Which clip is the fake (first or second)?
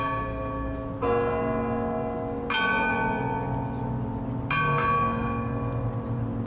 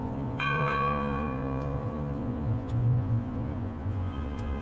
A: second